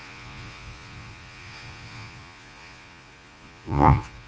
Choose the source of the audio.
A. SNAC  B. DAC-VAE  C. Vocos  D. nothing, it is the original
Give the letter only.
C